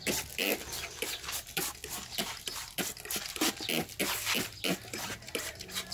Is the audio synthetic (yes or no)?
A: no